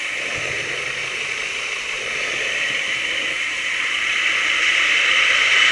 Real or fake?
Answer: fake